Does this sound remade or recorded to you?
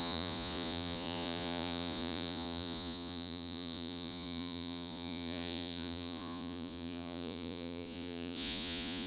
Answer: remade